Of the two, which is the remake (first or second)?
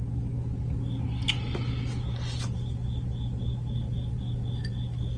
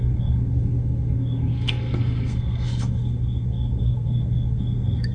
second